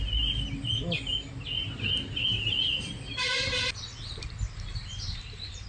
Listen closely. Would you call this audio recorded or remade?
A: recorded